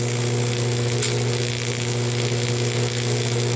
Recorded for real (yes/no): yes